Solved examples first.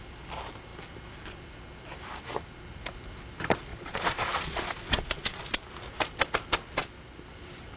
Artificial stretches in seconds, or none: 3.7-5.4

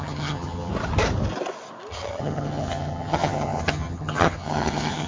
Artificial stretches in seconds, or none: 0.0-0.7; 1.9-5.1

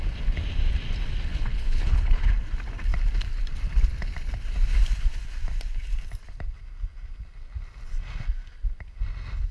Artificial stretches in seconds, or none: 1.3-2.3

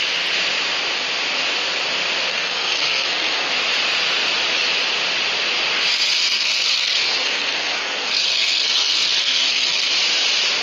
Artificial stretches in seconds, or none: 2.3-3.5; 5.9-9.9

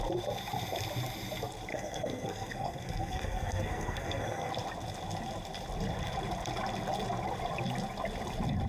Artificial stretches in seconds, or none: 1.7-4.5